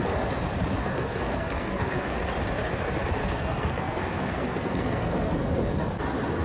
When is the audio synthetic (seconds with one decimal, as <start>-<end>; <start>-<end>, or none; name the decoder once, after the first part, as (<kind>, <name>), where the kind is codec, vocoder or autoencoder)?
0.8-2.2 (codec, SNAC); 3.2-5.9